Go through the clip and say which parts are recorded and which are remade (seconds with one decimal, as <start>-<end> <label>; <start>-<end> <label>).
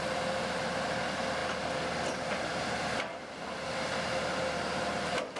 0.0-5.4 recorded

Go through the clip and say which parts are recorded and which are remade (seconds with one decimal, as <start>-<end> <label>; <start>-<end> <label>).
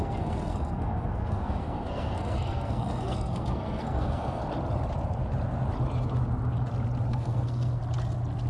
0.0-4.4 remade; 4.4-7.1 recorded; 7.1-7.8 remade; 7.8-8.5 recorded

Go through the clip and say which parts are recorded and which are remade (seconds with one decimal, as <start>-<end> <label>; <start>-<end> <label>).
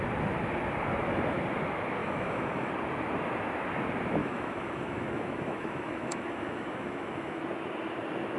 0.0-2.0 recorded; 2.0-2.7 remade; 2.7-4.2 recorded; 4.2-7.4 remade; 7.4-8.4 recorded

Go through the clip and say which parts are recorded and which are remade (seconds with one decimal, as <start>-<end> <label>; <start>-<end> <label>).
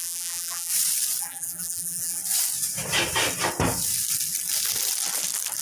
0.0-0.7 remade; 0.7-1.2 recorded; 1.2-2.2 remade; 2.2-5.6 recorded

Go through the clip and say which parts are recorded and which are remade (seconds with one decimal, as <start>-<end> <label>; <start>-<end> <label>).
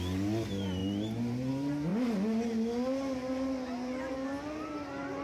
0.0-5.2 recorded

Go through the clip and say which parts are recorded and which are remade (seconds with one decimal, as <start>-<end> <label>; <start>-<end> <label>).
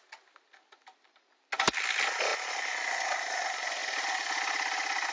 0.0-5.1 recorded